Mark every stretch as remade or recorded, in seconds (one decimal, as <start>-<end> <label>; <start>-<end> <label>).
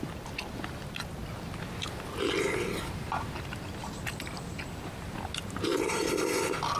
0.0-6.8 recorded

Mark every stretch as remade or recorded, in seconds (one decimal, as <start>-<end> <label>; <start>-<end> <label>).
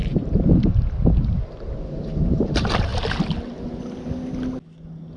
0.0-2.9 remade; 2.9-5.2 recorded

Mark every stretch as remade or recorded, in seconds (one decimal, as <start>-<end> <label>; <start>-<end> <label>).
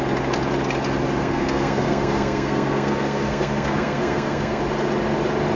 0.0-1.2 recorded; 1.2-4.6 remade; 4.6-5.6 recorded